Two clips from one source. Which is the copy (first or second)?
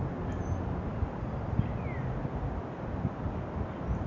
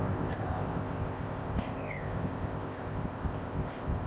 second